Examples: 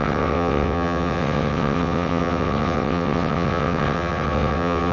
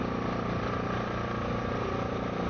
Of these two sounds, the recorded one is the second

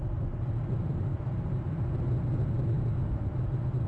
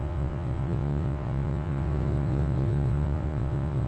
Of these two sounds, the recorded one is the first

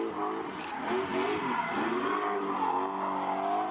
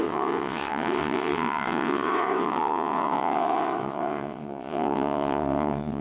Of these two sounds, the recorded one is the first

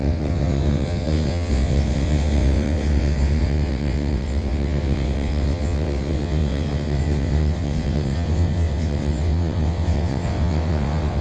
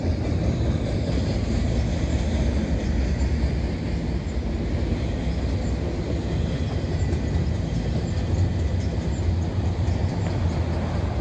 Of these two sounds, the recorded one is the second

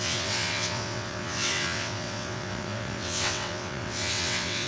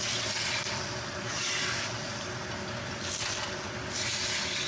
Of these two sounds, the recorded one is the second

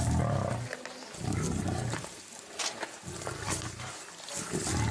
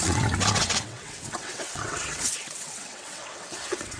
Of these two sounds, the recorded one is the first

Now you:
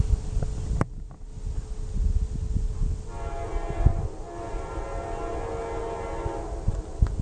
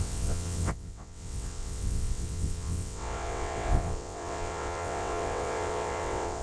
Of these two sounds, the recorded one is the first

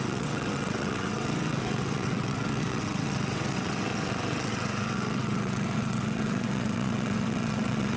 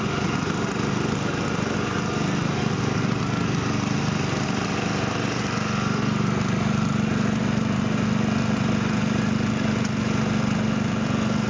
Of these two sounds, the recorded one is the second